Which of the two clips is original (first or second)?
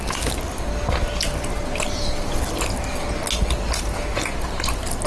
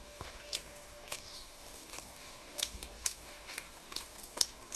first